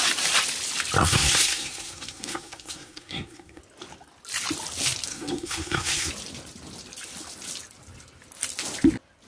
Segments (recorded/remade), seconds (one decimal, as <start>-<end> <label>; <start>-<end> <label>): 0.0-1.0 recorded; 1.0-3.6 remade; 3.6-5.1 recorded; 5.1-6.1 remade; 6.1-9.3 recorded